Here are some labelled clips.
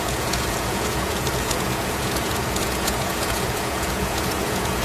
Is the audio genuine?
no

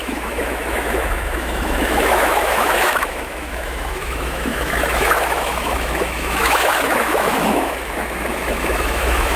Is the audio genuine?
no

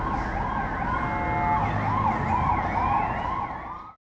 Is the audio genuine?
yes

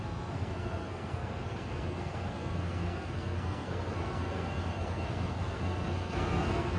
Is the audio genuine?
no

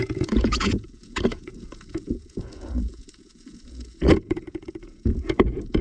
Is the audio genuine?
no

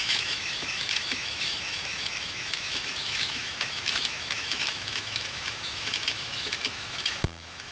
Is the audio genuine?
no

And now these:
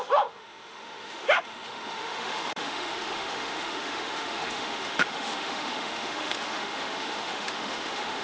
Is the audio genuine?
no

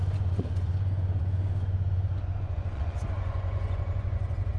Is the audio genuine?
no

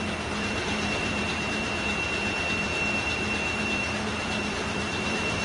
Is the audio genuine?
no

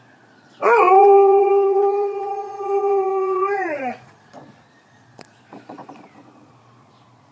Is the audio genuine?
no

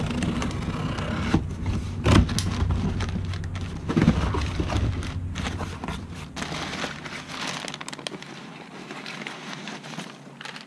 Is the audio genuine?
yes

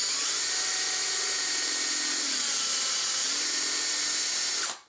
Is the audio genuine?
yes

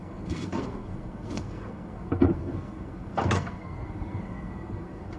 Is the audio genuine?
no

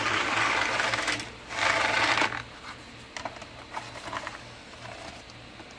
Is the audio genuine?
yes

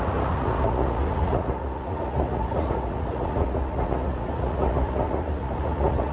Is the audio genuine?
no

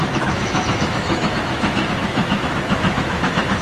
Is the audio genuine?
no